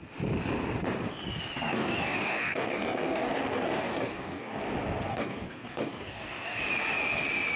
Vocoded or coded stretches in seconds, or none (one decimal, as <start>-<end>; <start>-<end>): 1.7-4.6; 5.1-6.6